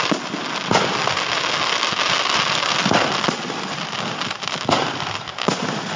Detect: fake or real real